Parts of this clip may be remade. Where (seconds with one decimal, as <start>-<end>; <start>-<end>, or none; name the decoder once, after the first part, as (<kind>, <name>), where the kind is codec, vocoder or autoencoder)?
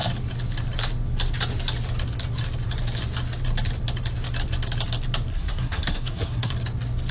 5.3-6.5 (codec, SNAC)